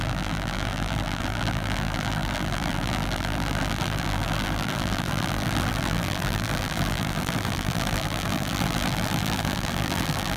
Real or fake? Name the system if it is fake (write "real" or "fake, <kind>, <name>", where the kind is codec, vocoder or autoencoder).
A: fake, vocoder, BigVGAN v2